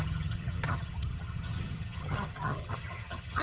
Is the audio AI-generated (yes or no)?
yes